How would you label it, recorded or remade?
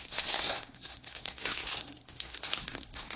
remade